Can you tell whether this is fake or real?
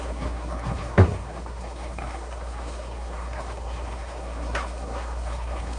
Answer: fake